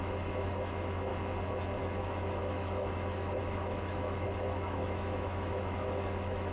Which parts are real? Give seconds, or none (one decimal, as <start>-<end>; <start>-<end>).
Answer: 1.1-1.8